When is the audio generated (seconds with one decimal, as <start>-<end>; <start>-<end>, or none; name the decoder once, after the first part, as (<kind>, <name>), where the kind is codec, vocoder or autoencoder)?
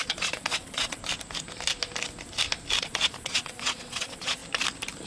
0.0-1.0 (vocoder, Vocos); 2.8-4.4